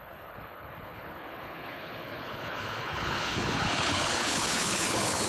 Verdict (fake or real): fake